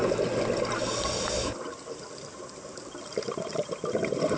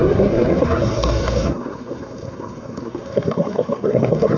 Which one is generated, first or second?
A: second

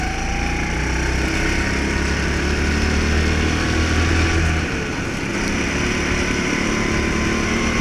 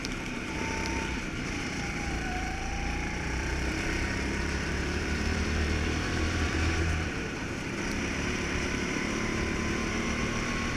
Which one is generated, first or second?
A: second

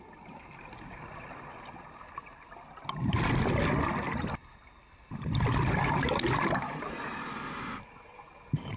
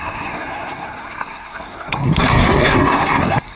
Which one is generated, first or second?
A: second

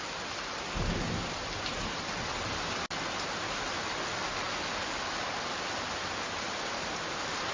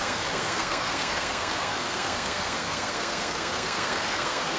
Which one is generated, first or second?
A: second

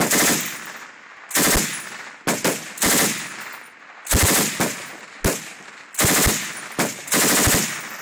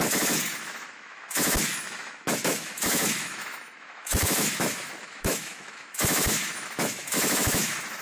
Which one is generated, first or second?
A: second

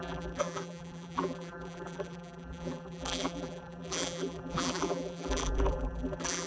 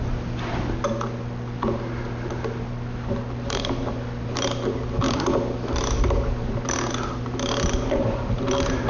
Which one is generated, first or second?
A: first